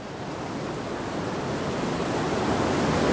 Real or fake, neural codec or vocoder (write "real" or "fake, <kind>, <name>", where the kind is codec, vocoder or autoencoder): real